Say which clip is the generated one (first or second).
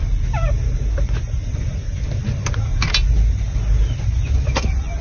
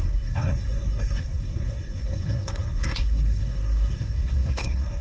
second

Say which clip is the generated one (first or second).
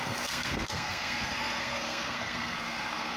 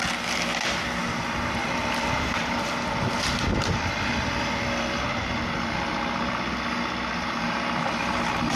first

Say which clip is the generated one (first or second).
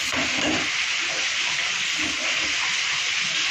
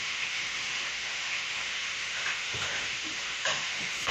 second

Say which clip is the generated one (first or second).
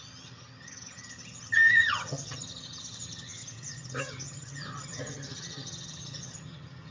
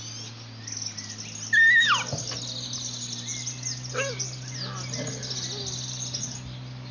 first